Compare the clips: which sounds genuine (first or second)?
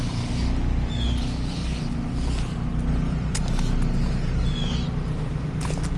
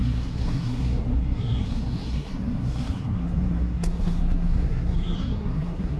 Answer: first